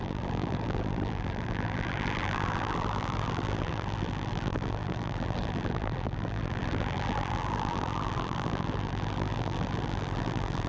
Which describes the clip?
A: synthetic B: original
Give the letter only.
A